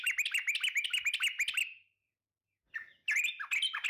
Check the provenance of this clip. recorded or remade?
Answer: recorded